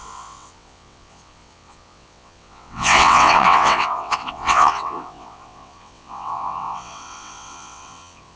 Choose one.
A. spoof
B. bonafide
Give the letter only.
A